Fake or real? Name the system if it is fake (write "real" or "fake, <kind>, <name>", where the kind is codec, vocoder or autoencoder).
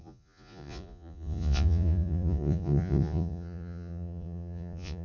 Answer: fake, vocoder, Vocos